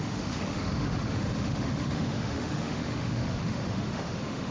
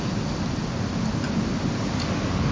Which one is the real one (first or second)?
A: second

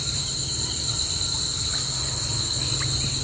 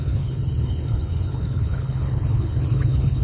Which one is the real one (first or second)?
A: first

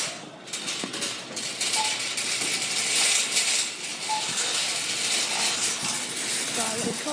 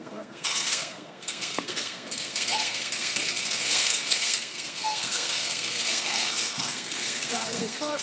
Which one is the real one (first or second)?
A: first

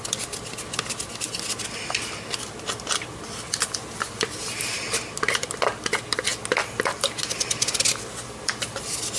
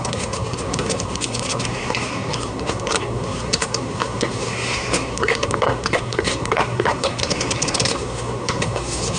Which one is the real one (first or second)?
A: first